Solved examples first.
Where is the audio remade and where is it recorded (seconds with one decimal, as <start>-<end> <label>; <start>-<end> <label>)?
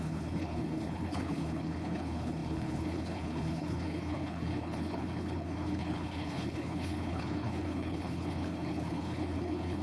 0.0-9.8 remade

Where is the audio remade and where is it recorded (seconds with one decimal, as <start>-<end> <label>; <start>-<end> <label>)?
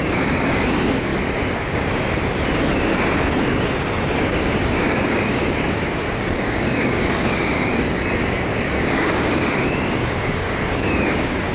0.0-1.1 remade; 1.1-2.8 recorded; 2.8-11.5 remade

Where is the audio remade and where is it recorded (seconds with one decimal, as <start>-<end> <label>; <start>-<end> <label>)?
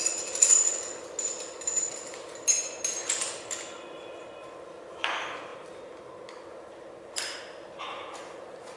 0.0-8.8 recorded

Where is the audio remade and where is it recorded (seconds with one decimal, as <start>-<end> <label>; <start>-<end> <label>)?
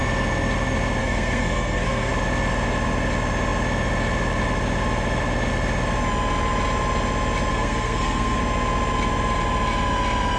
0.0-1.0 recorded; 1.0-2.1 remade; 2.1-7.5 recorded; 7.5-8.4 remade; 8.4-10.4 recorded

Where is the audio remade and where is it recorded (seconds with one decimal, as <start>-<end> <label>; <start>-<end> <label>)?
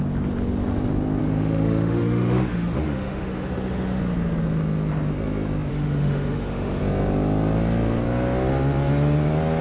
0.0-1.2 recorded; 1.2-4.0 remade; 4.0-5.7 recorded; 5.7-6.8 remade; 6.8-9.6 recorded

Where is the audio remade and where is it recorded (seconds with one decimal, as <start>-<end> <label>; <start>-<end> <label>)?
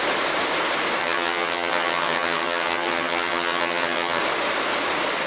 0.0-1.0 recorded; 1.0-4.2 remade; 4.2-5.3 recorded